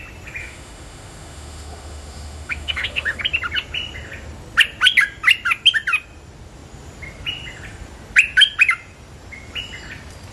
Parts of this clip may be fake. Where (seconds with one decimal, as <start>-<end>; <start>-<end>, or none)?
0.4-3.2